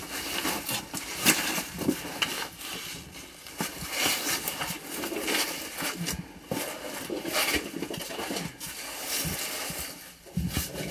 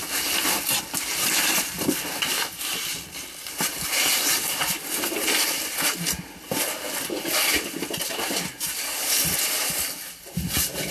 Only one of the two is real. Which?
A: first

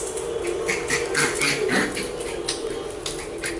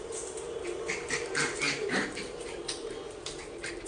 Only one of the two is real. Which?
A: first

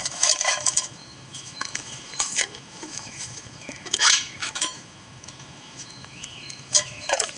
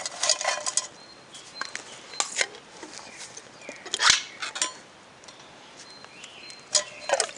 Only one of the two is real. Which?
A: second